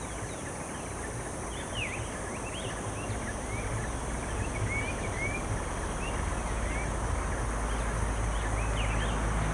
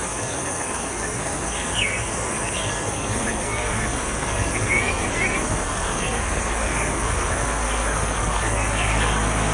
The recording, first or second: first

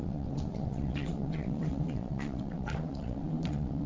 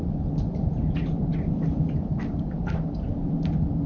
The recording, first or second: second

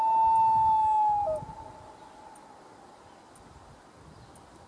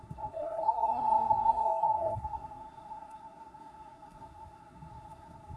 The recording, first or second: first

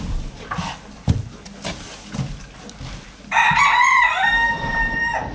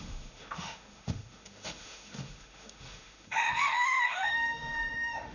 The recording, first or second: first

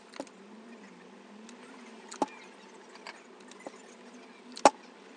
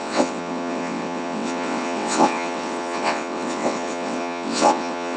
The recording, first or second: first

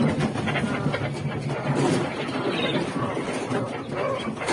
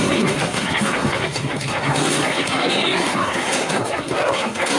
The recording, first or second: first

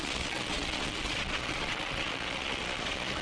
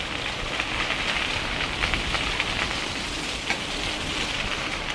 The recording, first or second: second